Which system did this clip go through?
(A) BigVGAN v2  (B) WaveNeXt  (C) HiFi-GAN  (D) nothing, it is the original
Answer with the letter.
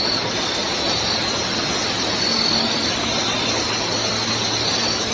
D